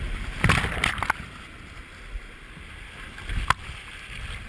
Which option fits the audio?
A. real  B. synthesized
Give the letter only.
A